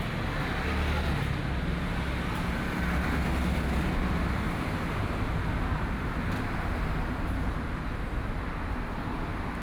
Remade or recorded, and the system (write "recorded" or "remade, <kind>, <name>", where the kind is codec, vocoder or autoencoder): recorded